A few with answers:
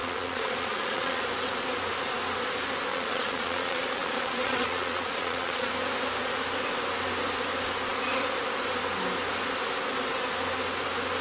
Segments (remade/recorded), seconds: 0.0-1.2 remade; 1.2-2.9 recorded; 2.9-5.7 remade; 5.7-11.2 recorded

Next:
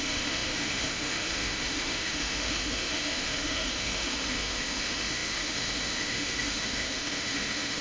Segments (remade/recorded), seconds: 0.0-7.8 remade